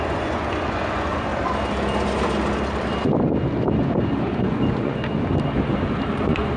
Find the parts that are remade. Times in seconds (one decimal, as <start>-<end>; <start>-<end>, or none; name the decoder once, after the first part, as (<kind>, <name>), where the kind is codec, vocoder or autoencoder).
0.0-1.3 (vocoder, Vocos); 4.2-5.1; 6.1-6.6